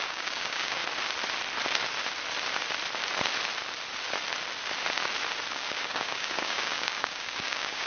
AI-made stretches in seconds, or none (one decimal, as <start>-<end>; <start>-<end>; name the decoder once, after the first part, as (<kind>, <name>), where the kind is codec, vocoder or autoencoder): 0.0-0.8 (codec, DAC); 5.5-7.9